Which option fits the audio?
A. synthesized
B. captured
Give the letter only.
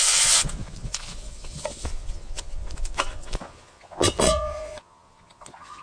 A